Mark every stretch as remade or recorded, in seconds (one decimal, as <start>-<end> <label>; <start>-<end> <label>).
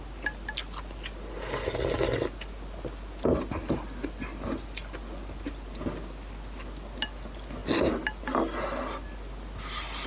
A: 0.0-10.1 recorded